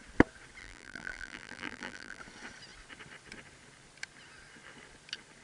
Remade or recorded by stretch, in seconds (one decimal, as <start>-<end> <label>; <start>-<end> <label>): 0.0-0.6 recorded; 0.6-2.2 remade; 2.2-5.4 recorded